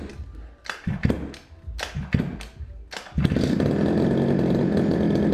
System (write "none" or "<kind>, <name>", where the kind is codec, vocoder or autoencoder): none